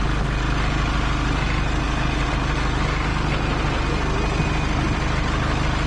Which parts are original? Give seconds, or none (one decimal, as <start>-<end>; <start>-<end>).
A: 0.0-5.9

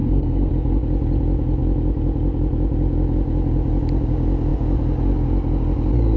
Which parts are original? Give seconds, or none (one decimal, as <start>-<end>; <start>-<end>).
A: 0.5-6.2